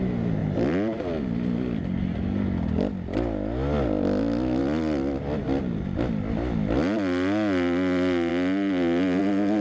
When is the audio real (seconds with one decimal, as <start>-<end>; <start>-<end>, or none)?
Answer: 0.0-4.6; 5.4-9.6